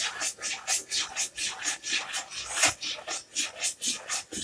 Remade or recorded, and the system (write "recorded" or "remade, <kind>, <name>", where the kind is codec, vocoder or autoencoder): recorded